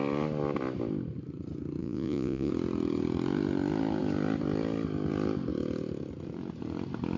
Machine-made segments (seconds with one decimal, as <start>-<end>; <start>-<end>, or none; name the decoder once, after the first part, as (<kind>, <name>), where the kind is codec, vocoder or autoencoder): 1.8-2.5 (vocoder, Vocos)